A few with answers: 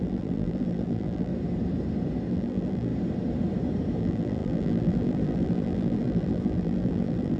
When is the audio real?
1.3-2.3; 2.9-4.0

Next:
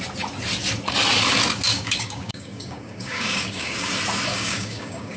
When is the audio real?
0.0-1.7; 3.9-4.3

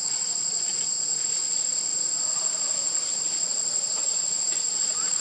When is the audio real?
0.0-5.2

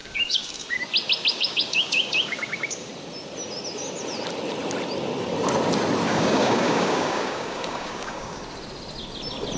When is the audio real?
0.8-1.3; 2.9-6.1; 8.4-9.6

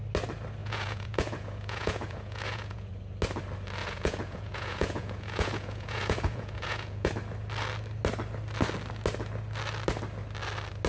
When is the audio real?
0.0-0.6; 2.9-3.8; 7.1-10.9

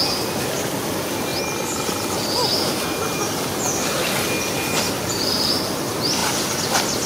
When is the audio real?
0.0-7.1

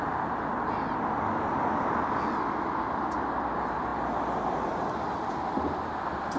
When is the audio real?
0.0-6.4